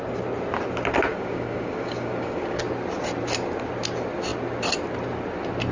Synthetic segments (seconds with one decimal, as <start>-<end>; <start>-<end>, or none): 1.1-2.6